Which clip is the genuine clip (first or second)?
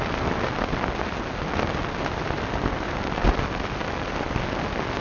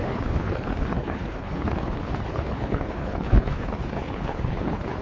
first